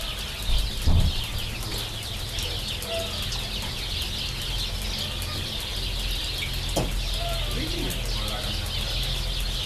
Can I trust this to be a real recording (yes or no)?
yes